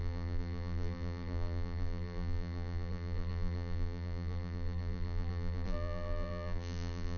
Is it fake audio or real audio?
fake